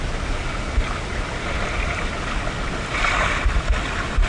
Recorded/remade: recorded